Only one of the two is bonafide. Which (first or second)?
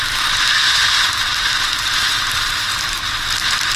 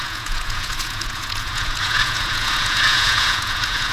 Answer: first